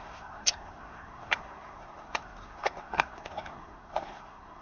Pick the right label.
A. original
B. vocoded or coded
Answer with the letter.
B